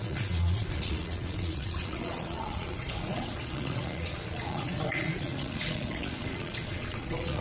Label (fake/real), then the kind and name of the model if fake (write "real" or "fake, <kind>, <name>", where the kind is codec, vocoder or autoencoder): fake, vocoder, Vocos